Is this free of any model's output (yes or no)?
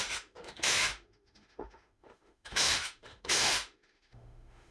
no